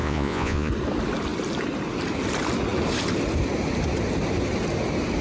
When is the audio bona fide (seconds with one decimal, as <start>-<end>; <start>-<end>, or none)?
0.7-5.2